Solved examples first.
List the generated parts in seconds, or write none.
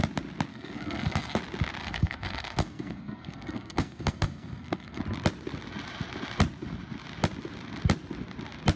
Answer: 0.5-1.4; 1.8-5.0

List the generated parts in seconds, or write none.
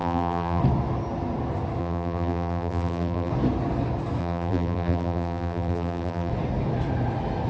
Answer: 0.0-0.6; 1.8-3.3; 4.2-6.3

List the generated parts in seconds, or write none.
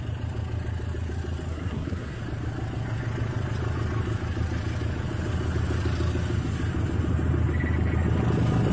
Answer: 1.5-2.2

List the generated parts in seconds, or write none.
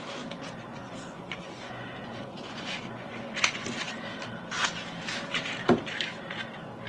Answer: 0.7-3.9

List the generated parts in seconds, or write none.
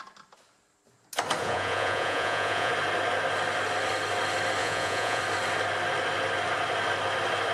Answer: 1.4-2.7; 4.6-5.2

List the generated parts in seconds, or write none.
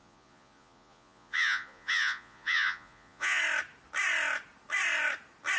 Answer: 0.0-3.4